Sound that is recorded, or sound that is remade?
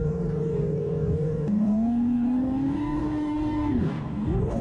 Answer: remade